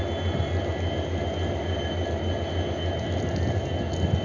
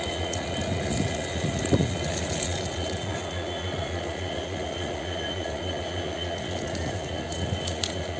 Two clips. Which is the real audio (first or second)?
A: first